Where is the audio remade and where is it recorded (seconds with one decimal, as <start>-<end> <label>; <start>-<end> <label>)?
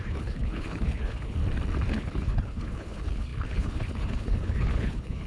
0.0-1.4 remade; 1.4-1.9 recorded; 1.9-5.3 remade